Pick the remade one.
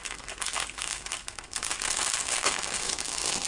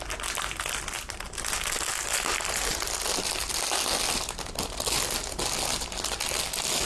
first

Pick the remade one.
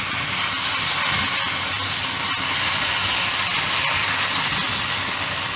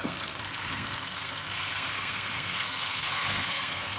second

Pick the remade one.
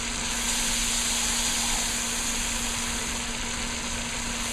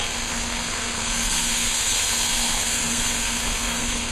second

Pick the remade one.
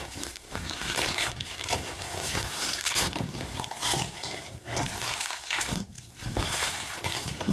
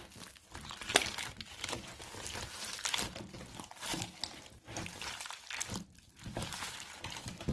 first